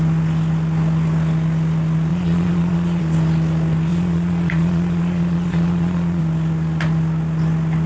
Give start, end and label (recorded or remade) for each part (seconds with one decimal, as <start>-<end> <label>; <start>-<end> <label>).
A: 0.0-2.1 recorded; 2.1-3.0 remade; 3.0-3.9 recorded; 3.9-6.2 remade; 6.2-7.9 recorded